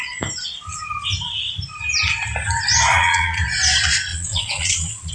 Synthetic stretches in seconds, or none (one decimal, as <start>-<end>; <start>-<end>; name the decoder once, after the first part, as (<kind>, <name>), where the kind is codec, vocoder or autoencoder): 2.9-3.4 (vocoder, Vocos); 4.1-5.1